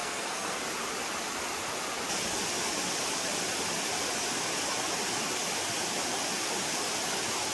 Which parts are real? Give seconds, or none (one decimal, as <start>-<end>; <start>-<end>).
0.6-7.5

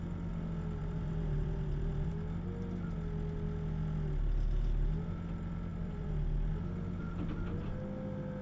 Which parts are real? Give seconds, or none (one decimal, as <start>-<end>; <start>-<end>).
0.0-0.8; 2.1-5.7; 6.5-8.4

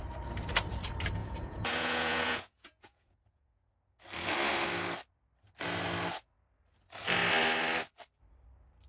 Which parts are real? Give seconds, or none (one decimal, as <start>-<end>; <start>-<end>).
0.0-1.2; 4.0-8.9

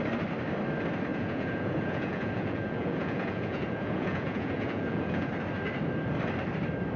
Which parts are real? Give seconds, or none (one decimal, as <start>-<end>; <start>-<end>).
0.0-1.1; 5.3-7.0

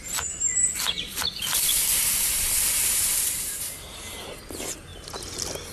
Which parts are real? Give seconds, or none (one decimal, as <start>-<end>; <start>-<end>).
0.0-0.6; 3.7-5.7